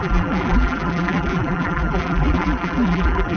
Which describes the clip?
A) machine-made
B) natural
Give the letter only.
A